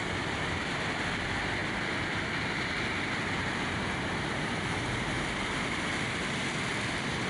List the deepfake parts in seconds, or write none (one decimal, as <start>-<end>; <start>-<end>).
none